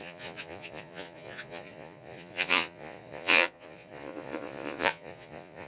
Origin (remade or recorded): remade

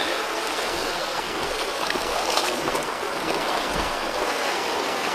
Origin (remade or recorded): remade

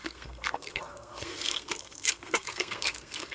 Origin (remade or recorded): remade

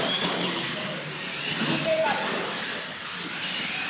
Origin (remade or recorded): recorded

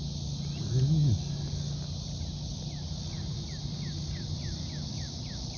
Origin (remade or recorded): recorded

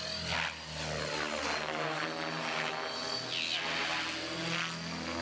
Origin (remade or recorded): recorded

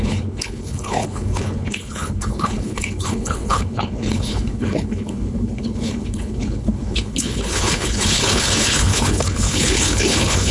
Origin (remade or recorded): remade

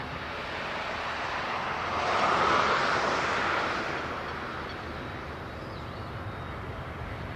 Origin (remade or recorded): recorded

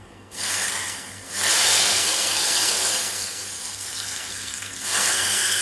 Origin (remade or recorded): remade